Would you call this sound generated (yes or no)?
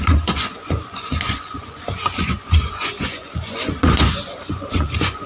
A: yes